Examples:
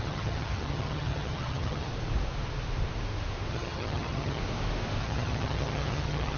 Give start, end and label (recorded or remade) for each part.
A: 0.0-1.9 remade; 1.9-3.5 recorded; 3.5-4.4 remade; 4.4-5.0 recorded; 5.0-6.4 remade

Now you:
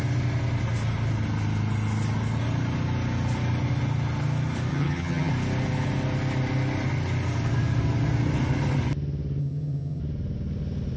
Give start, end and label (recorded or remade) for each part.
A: 0.0-4.7 recorded; 4.7-5.3 remade; 5.3-9.4 recorded; 9.4-10.0 remade; 10.0-11.0 recorded

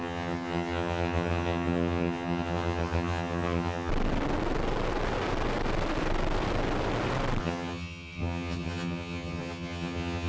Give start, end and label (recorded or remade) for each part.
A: 0.0-3.9 remade; 3.9-7.4 recorded; 7.4-10.3 remade

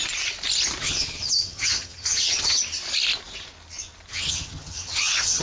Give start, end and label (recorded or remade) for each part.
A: 0.0-0.8 recorded; 0.8-2.6 remade; 2.6-4.1 recorded; 4.1-5.4 remade

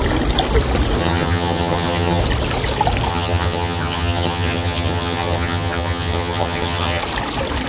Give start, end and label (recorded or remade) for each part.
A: 0.0-1.0 recorded; 1.0-2.2 remade; 2.2-3.1 recorded; 3.1-7.0 remade; 7.0-7.7 recorded

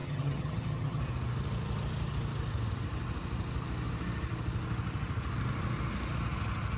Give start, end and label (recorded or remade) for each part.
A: 0.0-1.0 remade; 1.0-6.8 recorded

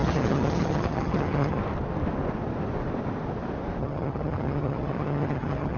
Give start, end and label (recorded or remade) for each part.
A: 0.0-1.6 remade; 1.6-3.8 recorded; 3.8-5.8 remade